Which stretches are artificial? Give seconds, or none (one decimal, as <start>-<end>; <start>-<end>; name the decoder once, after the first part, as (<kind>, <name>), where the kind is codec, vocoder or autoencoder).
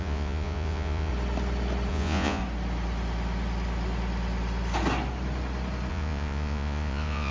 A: 0.0-1.1 (vocoder, Vocos); 1.9-2.4; 5.9-7.3